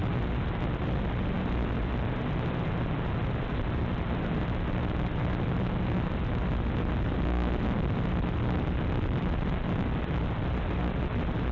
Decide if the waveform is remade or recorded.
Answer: recorded